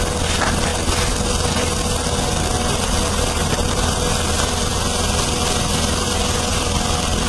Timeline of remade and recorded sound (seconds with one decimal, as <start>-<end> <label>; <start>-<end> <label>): 0.0-7.3 recorded